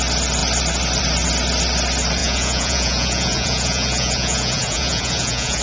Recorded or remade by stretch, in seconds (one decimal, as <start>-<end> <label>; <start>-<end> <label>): 0.0-2.2 recorded; 2.2-5.6 remade